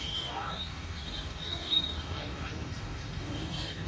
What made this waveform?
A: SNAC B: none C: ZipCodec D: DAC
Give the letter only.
D